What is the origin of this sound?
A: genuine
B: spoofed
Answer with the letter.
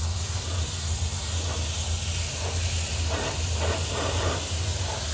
A